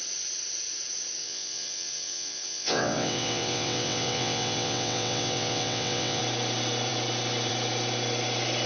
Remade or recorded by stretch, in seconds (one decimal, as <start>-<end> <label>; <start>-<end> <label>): 0.0-1.2 recorded; 1.2-6.2 remade; 6.2-8.7 recorded